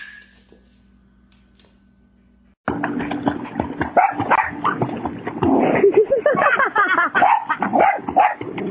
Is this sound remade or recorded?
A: recorded